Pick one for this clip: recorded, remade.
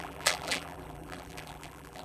remade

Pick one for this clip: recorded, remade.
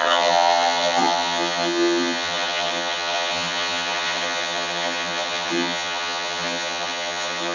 remade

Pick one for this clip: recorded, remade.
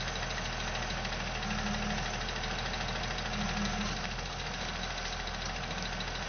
recorded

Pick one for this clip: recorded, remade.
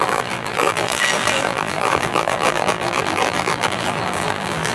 remade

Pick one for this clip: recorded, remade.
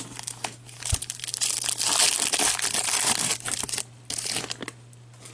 recorded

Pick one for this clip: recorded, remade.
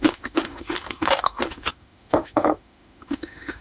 remade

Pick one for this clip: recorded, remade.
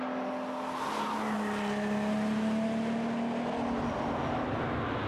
recorded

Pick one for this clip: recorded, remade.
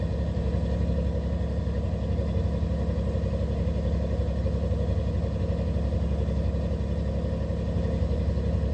recorded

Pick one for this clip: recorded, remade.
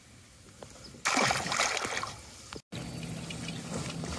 recorded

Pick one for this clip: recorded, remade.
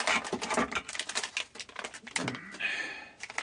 recorded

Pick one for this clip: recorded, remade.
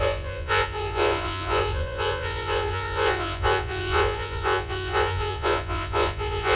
remade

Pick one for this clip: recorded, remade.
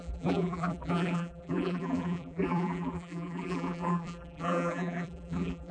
remade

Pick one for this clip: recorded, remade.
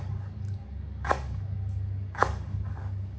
remade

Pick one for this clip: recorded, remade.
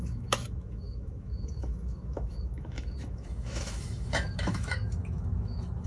remade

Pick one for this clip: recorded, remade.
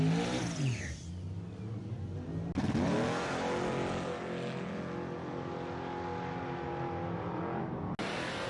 recorded